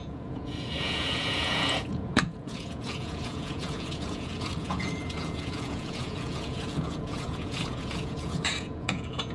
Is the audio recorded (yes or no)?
no